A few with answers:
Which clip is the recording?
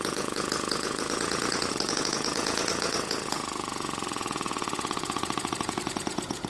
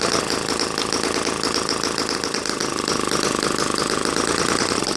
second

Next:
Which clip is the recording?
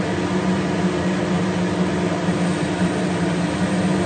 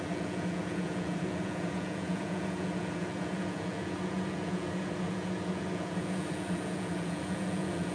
first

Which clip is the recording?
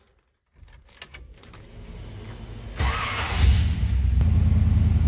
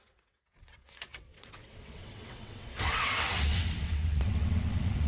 first